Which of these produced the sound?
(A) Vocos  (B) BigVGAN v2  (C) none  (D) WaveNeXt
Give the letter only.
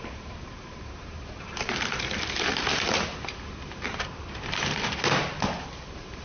B